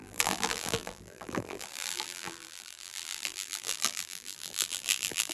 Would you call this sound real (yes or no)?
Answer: no